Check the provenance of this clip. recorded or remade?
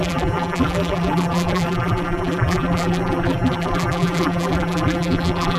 remade